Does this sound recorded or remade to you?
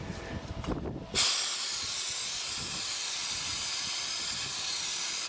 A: recorded